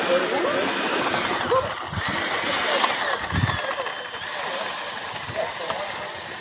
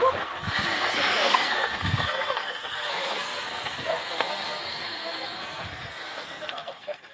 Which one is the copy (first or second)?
second